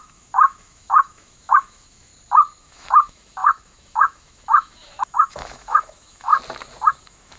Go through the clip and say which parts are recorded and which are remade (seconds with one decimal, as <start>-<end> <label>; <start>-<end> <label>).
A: 0.0-2.1 remade; 2.1-2.6 recorded; 2.6-6.3 remade; 6.3-6.9 recorded; 6.9-7.4 remade